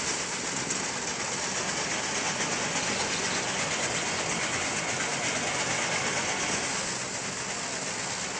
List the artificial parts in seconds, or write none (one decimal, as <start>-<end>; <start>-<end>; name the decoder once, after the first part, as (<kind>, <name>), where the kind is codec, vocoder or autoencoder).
2.3-6.7 (vocoder, Vocos)

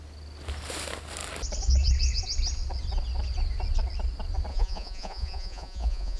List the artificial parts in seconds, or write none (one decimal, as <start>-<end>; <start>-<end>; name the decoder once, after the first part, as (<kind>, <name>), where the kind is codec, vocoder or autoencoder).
4.5-6.2 (vocoder, Vocos)